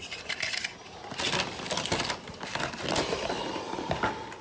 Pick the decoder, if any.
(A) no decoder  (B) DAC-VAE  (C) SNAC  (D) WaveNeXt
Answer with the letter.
A